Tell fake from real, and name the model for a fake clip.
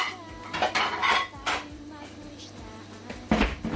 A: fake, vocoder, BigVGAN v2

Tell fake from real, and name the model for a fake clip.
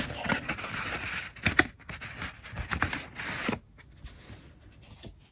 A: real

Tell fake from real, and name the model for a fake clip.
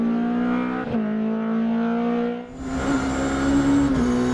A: real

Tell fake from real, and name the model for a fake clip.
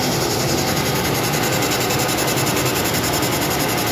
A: real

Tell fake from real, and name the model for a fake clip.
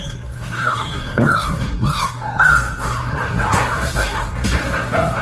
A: fake, codec, SNAC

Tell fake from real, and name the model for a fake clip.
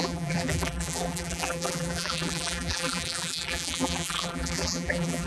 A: fake, vocoder, BigVGAN v2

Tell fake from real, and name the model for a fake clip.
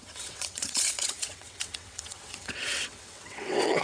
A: fake, vocoder, WaveNeXt